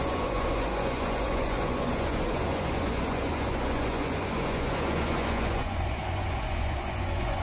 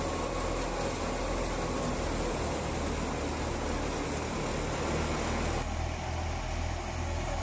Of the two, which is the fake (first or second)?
first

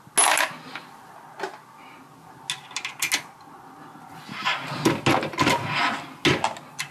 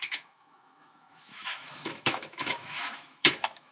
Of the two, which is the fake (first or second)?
second